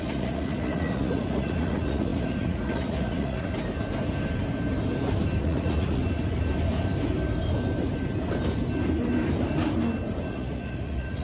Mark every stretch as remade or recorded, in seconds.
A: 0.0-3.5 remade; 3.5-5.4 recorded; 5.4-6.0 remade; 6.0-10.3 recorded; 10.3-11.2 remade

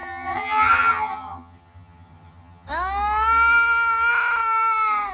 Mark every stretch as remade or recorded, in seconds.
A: 0.0-2.7 remade; 2.7-5.1 recorded

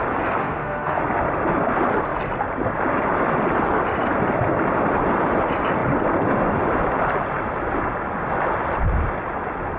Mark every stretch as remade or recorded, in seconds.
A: 0.0-0.4 recorded; 0.4-1.0 remade; 1.0-9.8 recorded

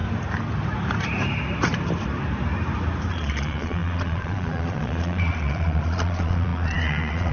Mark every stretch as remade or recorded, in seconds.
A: 0.0-3.1 recorded; 3.1-7.3 remade